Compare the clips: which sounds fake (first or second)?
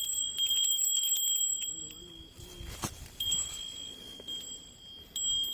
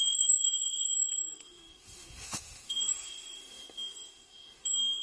second